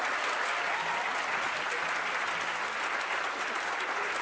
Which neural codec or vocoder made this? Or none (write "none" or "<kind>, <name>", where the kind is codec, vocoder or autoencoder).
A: none